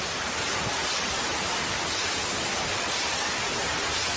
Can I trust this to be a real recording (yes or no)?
no